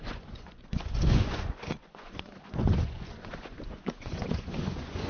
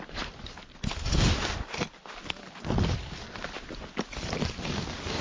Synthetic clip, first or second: first